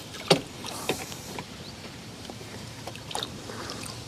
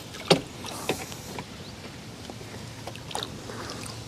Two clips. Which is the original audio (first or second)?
second